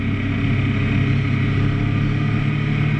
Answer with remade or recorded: recorded